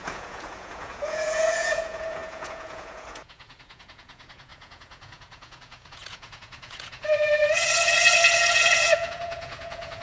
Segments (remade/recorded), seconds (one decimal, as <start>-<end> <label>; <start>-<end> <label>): 0.0-10.0 remade